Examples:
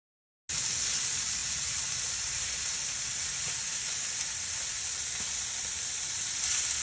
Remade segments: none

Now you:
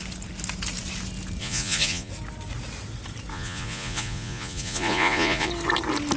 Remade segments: 1.4-2.1 (vocoder, Vocos); 3.3-5.5

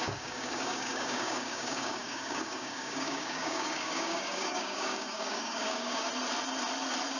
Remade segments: 0.0-6.1 (codec, DAC)

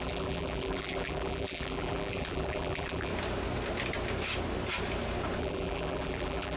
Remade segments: 0.0-3.1 (vocoder, BigVGAN v2); 5.4-6.6

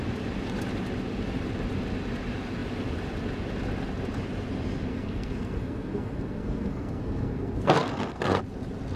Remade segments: 4.9-8.4 (codec, SNAC)

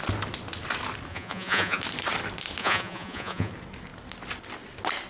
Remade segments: 1.1-1.8 (vocoder, Vocos); 2.6-3.5

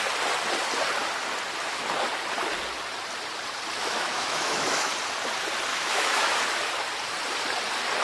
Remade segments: 3.8-4.9 (autoencoder, DAC-VAE); 5.7-6.3

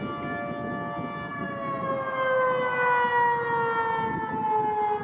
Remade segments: none